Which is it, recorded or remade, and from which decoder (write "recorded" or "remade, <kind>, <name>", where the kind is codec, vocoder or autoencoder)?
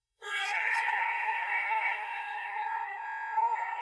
remade, codec, SNAC